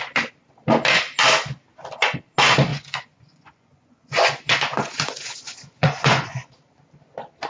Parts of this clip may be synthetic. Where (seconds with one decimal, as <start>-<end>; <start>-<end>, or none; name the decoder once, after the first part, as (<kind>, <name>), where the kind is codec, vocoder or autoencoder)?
2.7-6.5 (vocoder, Vocos)